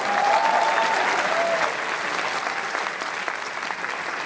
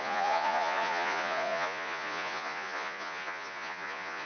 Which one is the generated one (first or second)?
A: second